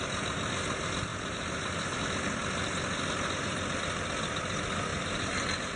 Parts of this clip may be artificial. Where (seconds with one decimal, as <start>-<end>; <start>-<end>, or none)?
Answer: 1.1-2.0; 4.9-5.8